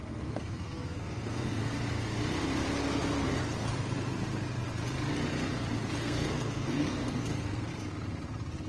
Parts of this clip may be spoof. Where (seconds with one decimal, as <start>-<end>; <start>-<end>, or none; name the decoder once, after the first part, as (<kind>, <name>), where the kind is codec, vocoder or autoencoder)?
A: 0.0-1.6 (codec, SNAC); 6.0-7.7